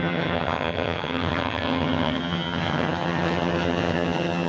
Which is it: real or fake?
fake